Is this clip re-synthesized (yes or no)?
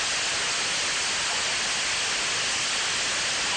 no